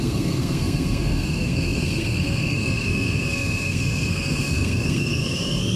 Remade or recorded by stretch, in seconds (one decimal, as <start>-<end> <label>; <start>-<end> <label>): 0.0-5.8 remade